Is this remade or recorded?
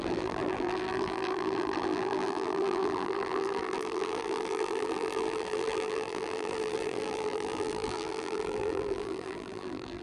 remade